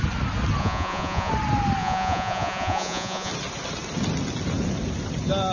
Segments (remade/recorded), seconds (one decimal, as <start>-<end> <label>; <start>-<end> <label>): 0.0-0.6 recorded; 0.6-1.3 remade; 1.3-1.8 recorded; 1.8-3.3 remade; 3.3-5.5 recorded

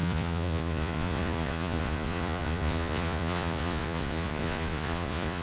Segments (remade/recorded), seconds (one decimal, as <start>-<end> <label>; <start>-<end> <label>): 0.0-5.4 remade